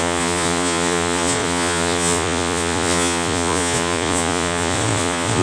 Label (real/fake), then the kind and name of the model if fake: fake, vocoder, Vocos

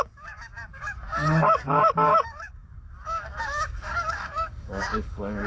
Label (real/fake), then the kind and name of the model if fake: fake, codec, DAC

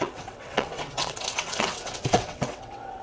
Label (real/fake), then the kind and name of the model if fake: fake, vocoder, WaveNeXt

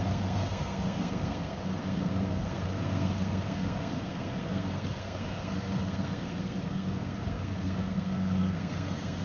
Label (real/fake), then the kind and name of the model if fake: fake, codec, SNAC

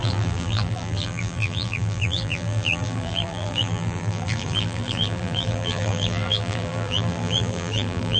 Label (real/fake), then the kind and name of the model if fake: fake, vocoder, BigVGAN v2